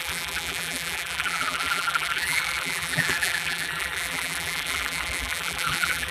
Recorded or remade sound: remade